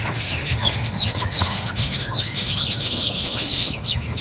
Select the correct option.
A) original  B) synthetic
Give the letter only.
B